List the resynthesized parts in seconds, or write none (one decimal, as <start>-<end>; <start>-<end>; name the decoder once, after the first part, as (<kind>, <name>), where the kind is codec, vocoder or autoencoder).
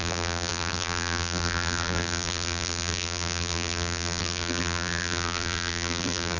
0.0-6.4 (vocoder, BigVGAN v2)